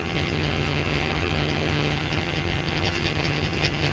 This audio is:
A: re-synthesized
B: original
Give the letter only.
A